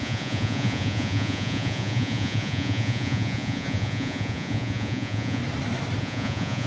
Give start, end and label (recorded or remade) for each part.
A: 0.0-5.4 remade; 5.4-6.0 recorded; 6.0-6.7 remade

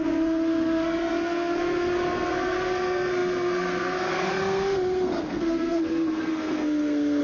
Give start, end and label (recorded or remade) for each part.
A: 0.0-7.2 remade

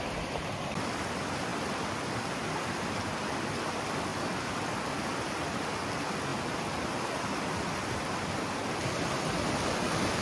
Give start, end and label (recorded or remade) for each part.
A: 0.0-10.2 recorded

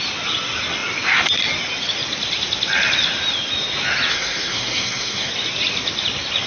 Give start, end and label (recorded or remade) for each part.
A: 0.0-4.1 recorded; 4.1-5.3 remade; 5.3-6.5 recorded

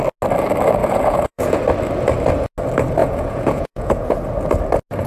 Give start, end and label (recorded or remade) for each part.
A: 0.0-0.8 recorded; 0.8-1.6 remade; 1.6-3.0 recorded; 3.0-4.2 remade; 4.2-5.1 recorded